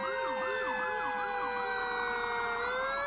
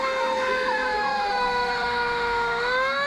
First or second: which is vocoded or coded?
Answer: second